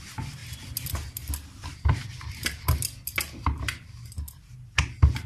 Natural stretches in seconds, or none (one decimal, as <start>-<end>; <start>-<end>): 0.0-5.3